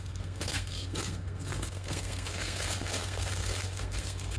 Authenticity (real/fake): fake